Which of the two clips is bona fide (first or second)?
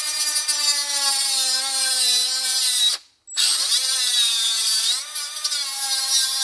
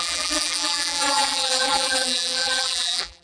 first